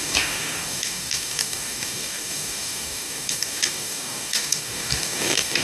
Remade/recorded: remade